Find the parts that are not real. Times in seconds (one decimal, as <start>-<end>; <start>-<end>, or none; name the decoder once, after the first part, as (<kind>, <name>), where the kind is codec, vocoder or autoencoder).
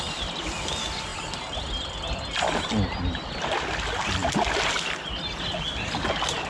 none